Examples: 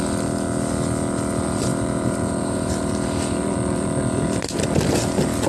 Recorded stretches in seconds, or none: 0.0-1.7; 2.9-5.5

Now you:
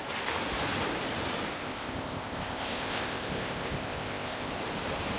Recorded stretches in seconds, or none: 0.0-1.6; 4.5-5.2

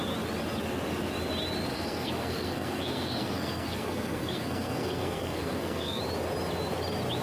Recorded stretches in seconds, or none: 0.0-1.7; 6.0-7.2

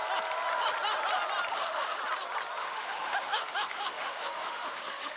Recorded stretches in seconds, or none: 0.0-1.5; 2.0-2.6

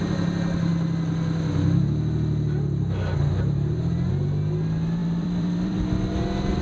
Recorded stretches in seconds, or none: 0.0-5.0; 5.8-6.6